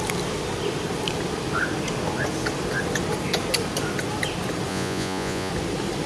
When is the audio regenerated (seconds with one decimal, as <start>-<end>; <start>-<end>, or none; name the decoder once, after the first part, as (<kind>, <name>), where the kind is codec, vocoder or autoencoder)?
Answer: 4.7-5.5 (vocoder, Vocos)